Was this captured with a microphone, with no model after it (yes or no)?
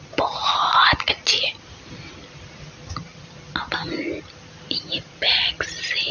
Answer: yes